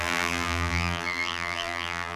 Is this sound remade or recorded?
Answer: remade